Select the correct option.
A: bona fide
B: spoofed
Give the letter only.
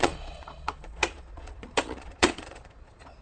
B